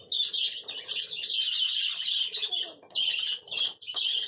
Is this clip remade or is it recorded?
recorded